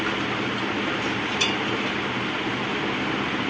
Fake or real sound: real